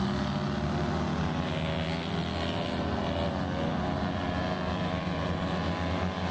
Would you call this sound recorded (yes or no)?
yes